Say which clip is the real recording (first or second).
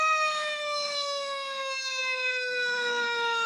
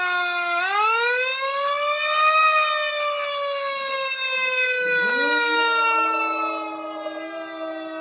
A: second